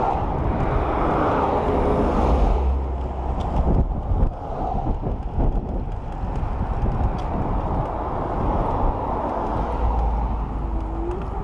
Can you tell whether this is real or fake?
real